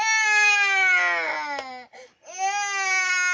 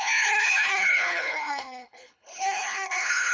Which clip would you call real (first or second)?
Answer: first